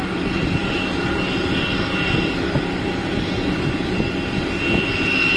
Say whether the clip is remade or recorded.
recorded